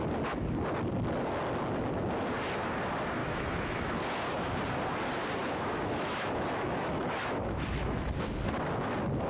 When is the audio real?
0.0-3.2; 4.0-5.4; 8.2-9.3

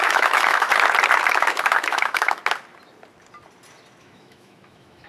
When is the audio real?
0.7-1.3; 2.4-4.0

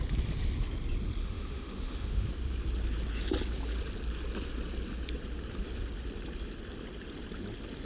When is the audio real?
0.0-1.2; 2.3-7.8

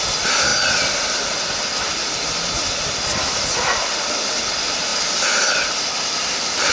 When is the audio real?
0.0-6.7